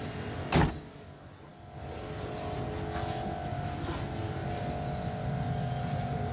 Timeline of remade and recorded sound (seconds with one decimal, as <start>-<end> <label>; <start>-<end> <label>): 0.0-6.3 recorded